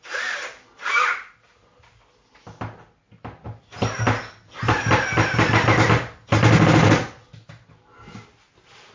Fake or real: real